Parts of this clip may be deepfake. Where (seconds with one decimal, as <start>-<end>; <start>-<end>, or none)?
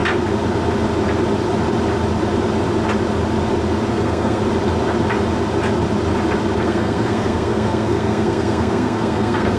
3.9-4.4; 6.6-9.6